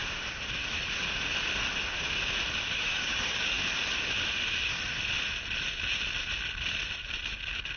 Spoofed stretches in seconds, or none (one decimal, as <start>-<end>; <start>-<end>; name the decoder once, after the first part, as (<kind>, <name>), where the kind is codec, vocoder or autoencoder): 2.7-3.6 (codec, DAC)